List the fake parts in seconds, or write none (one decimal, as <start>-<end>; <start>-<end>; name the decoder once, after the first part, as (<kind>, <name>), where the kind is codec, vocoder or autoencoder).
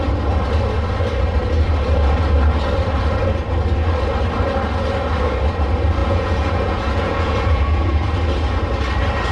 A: 6.0-8.1 (vocoder, Vocos)